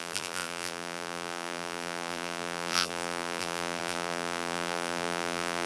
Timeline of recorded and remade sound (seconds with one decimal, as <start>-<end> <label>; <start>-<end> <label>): 0.0-5.7 remade